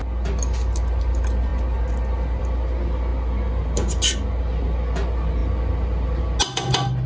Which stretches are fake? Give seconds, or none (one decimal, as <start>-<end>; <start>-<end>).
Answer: none